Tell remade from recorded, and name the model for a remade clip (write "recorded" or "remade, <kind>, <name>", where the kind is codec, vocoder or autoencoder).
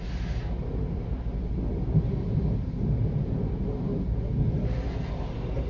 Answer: recorded